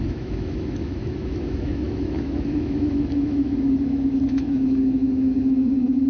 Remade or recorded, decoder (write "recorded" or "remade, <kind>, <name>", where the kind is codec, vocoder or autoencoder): remade, autoencoder, DAC-VAE